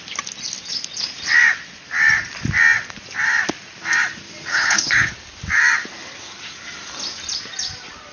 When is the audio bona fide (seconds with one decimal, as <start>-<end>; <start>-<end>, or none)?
0.0-4.5; 5.1-8.1